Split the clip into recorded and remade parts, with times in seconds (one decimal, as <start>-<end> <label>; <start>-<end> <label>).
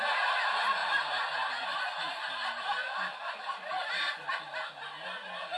0.0-5.6 recorded